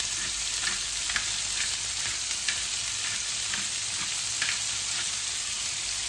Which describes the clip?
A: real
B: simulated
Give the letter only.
A